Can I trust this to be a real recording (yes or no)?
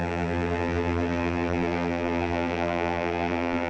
no